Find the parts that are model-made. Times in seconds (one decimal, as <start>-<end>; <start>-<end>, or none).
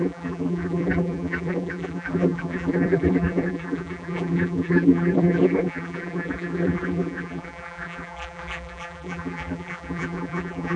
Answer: 0.0-10.8